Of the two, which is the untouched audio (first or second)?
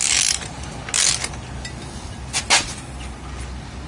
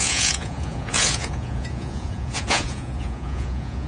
first